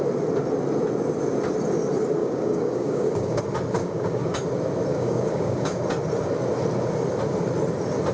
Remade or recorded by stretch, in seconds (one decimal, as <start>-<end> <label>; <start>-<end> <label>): 0.0-2.2 recorded; 2.2-3.4 remade; 3.4-3.8 recorded; 3.8-4.4 remade; 4.4-4.9 recorded; 4.9-5.8 remade; 5.8-8.1 recorded